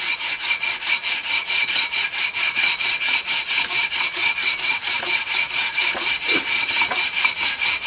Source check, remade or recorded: remade